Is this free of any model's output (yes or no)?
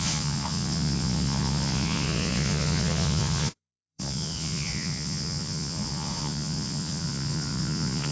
no